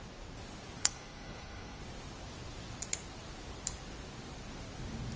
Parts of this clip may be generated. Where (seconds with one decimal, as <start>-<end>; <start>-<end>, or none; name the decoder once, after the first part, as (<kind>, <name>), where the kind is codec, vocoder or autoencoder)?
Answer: 0.8-1.8 (codec, SNAC)